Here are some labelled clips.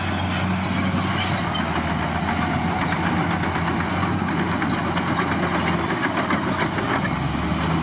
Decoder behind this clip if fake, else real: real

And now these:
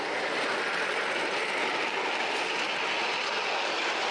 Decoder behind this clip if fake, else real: real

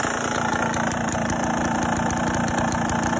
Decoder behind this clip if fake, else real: real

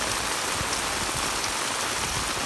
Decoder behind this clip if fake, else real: real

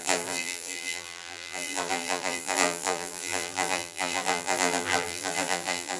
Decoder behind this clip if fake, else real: fake, vocoder, BigVGAN v2